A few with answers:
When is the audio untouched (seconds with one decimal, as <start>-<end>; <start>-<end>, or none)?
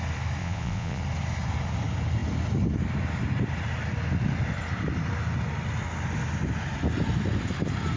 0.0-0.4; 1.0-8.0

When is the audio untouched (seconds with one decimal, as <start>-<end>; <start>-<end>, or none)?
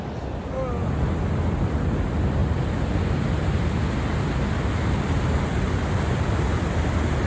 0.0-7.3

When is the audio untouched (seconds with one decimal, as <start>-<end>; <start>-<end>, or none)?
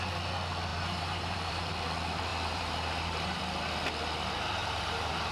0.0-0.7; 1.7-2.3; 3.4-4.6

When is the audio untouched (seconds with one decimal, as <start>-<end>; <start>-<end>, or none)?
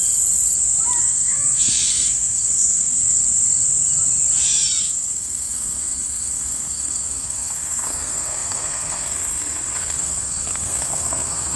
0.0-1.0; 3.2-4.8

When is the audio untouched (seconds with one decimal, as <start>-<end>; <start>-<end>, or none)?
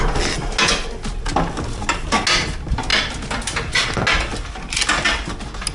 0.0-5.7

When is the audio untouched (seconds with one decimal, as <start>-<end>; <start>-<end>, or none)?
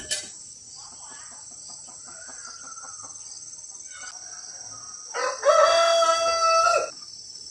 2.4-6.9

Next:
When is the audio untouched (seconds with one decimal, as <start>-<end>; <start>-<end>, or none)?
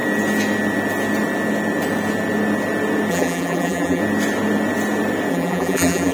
0.0-3.1; 4.0-5.3